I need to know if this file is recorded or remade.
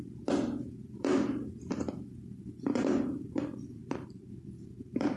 remade